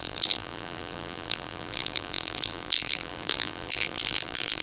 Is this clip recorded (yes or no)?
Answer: no